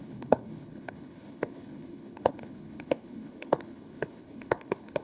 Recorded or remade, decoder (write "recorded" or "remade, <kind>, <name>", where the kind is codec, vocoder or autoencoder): remade, codec, HILCodec